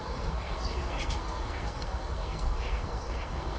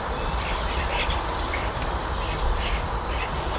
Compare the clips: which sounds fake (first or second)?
first